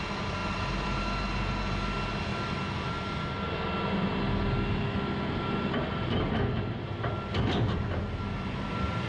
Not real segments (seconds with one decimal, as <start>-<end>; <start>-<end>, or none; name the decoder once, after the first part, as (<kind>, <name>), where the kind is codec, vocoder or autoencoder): 0.4-1.0 (vocoder, BigVGAN v2)